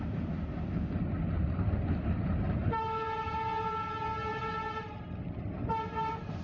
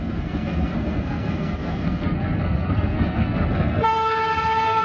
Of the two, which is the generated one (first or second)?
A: second